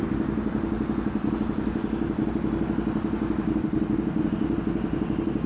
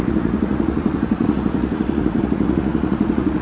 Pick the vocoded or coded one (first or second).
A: second